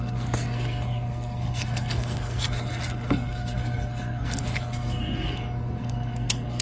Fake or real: fake